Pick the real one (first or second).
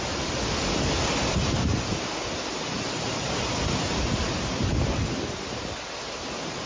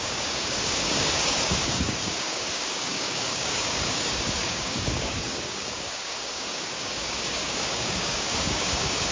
first